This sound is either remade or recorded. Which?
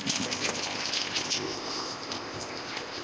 remade